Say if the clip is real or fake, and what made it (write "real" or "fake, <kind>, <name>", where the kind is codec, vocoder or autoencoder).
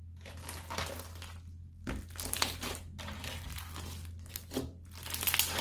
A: real